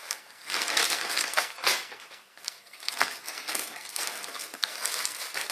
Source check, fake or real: fake